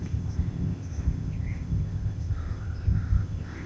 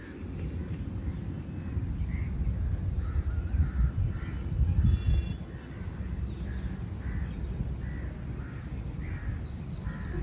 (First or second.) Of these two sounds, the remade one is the first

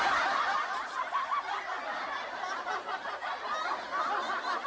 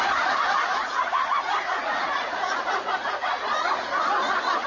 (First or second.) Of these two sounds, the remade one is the second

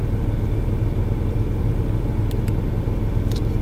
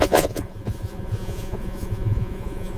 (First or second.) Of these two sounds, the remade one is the second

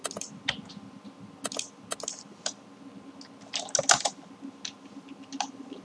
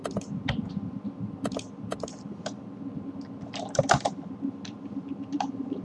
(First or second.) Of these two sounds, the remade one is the second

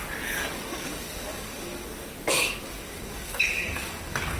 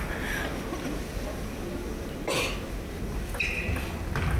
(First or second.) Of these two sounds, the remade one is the first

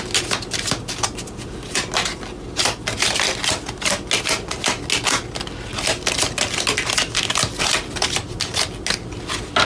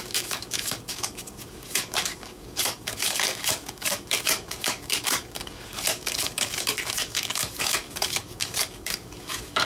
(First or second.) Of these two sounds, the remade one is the second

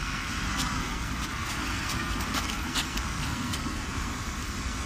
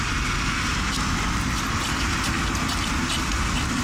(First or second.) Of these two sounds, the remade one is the first